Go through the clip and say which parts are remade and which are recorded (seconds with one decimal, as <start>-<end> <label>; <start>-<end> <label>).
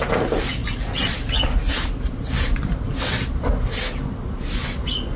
0.0-5.2 recorded